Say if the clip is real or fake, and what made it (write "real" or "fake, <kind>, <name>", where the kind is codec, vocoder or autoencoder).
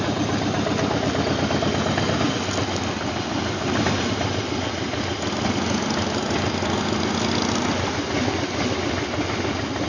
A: real